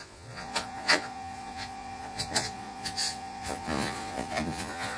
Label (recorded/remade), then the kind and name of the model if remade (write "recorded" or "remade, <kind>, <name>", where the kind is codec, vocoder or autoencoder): remade, vocoder, Vocos